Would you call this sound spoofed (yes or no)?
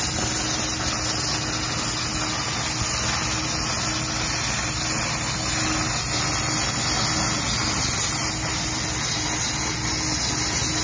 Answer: no